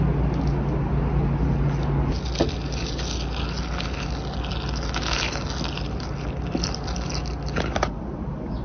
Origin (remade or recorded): recorded